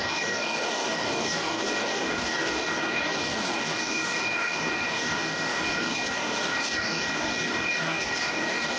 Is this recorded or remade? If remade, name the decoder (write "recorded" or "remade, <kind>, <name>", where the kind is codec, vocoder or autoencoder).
remade, codec, DAC